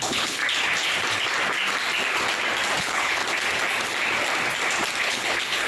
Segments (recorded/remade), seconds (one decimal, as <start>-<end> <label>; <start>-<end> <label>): 0.0-0.4 remade; 0.4-2.8 recorded; 2.8-3.2 remade; 3.2-5.0 recorded; 5.0-5.7 remade